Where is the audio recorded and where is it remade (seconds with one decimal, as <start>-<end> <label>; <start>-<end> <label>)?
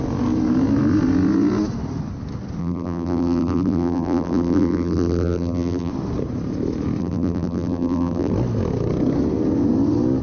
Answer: 0.0-2.6 recorded; 2.6-5.9 remade; 5.9-7.0 recorded; 7.0-8.3 remade; 8.3-10.2 recorded